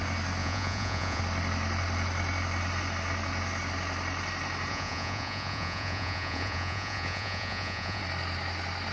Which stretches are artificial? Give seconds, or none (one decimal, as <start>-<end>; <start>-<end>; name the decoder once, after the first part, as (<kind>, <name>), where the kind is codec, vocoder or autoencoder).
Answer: 0.4-1.2 (vocoder, Vocos); 4.7-8.0